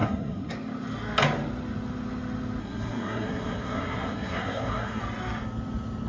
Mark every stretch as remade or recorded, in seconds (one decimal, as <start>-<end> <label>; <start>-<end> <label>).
0.0-0.5 remade; 0.5-2.6 recorded; 2.6-5.0 remade; 5.0-6.1 recorded

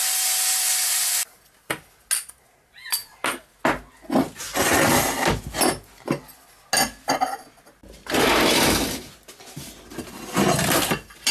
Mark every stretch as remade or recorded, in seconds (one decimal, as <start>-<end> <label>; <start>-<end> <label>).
0.0-11.3 recorded

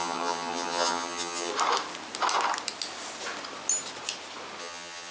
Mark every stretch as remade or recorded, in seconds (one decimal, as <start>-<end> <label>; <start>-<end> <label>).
0.0-1.5 remade; 1.5-4.6 recorded; 4.6-5.1 remade

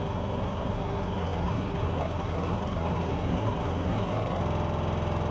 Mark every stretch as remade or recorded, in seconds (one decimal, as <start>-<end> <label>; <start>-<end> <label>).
0.0-4.4 remade; 4.4-5.3 recorded

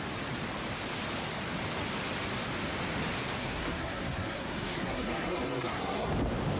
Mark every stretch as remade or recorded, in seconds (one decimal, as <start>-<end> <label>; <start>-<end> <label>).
0.0-3.4 recorded; 3.4-6.1 remade; 6.1-6.6 recorded

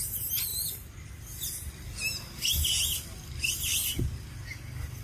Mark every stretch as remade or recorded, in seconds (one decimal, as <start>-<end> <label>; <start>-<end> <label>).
0.0-5.0 recorded

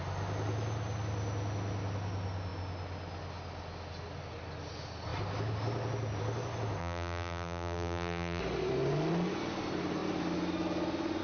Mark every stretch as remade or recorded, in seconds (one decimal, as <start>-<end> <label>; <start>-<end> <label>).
0.0-6.8 recorded; 6.8-8.4 remade; 8.4-11.2 recorded